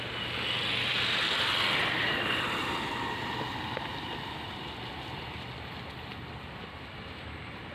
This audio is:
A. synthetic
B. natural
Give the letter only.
B